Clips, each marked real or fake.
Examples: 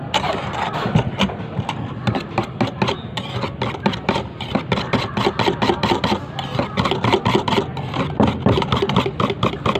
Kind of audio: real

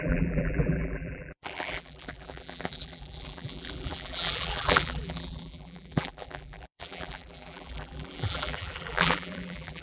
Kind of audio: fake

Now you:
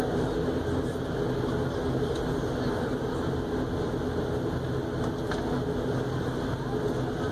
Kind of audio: real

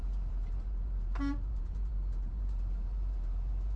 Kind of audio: fake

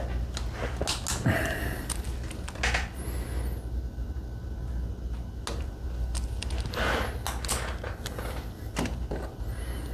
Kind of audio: real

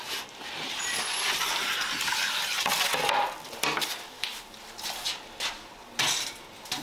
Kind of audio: real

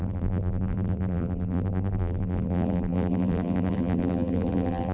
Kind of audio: fake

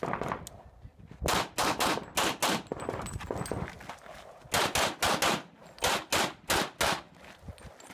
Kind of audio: real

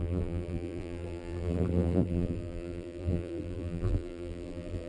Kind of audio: fake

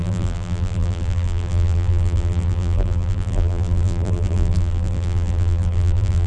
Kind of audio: fake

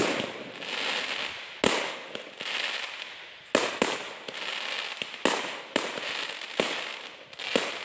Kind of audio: real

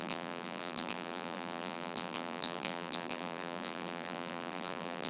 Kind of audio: fake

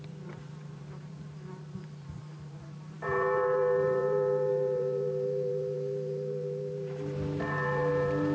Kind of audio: fake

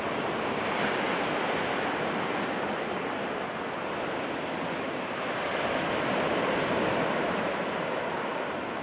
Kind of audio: real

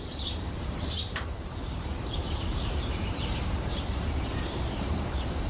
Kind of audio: fake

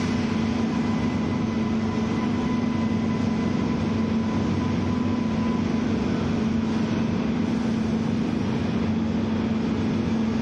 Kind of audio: real